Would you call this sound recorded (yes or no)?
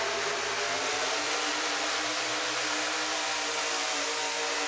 yes